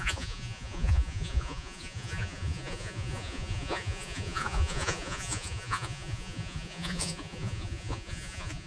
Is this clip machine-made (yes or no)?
yes